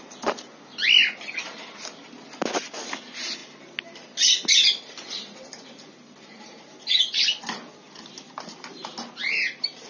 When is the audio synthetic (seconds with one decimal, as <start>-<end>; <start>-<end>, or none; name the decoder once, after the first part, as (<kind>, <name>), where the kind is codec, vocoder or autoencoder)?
none